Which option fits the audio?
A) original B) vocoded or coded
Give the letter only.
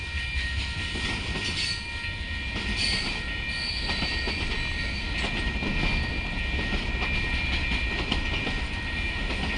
A